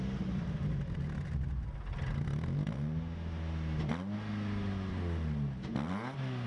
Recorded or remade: recorded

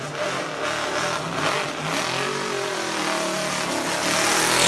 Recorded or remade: recorded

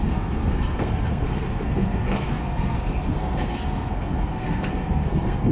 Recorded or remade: remade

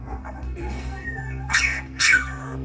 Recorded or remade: remade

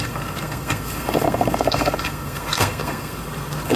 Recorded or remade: remade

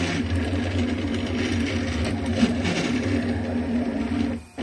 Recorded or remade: recorded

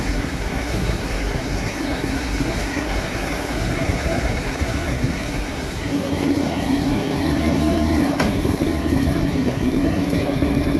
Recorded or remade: remade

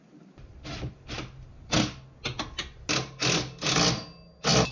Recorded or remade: recorded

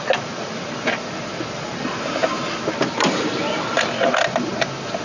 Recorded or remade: recorded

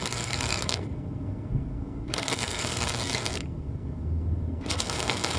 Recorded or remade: remade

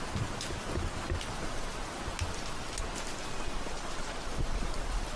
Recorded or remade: recorded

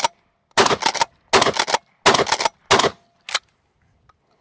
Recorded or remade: recorded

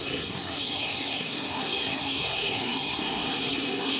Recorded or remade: remade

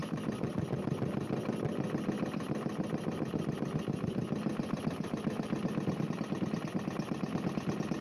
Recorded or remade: recorded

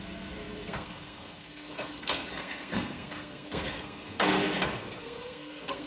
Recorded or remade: remade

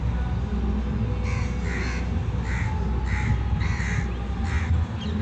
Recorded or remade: recorded